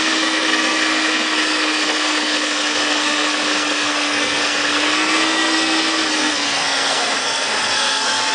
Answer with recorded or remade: remade